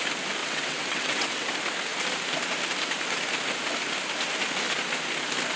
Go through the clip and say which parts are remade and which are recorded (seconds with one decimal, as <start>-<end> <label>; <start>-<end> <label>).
0.0-0.4 recorded; 0.4-1.5 remade; 1.5-5.6 recorded

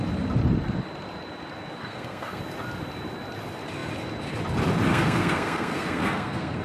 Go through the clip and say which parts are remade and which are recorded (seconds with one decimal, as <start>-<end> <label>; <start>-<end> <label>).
0.0-1.8 recorded; 1.8-2.4 remade; 2.4-4.9 recorded; 4.9-6.6 remade

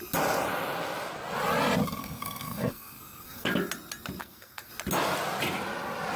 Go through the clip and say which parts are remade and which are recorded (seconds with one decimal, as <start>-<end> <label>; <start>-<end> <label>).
0.0-2.0 recorded; 2.0-3.5 remade; 3.5-4.2 recorded; 4.2-4.7 remade; 4.7-6.2 recorded

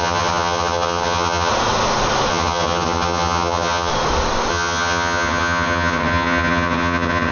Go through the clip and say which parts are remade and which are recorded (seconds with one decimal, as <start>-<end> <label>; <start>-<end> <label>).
0.0-1.5 remade; 1.5-2.3 recorded; 2.3-3.9 remade; 3.9-4.5 recorded; 4.5-7.3 remade